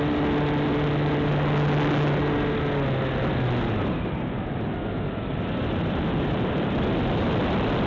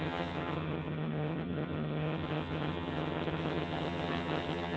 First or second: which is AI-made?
second